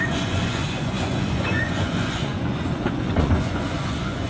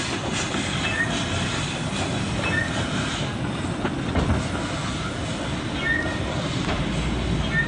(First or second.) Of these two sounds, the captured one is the second